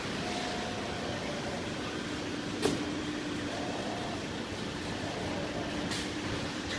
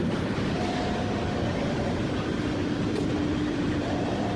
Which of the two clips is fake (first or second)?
second